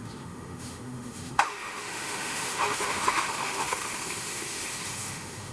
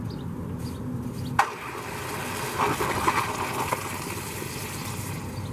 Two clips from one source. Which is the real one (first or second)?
second